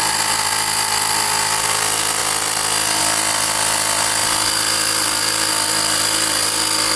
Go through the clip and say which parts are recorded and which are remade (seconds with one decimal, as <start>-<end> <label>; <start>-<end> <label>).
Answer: 0.0-7.0 recorded